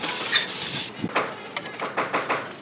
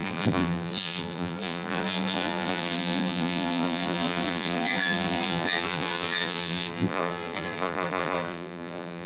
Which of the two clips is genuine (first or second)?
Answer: first